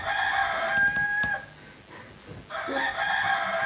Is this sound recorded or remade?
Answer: recorded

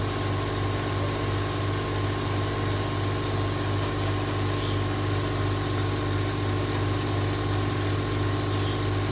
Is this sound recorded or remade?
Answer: recorded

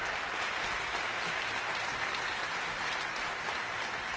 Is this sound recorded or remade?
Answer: recorded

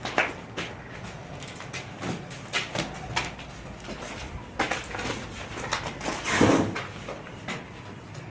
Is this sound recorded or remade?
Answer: recorded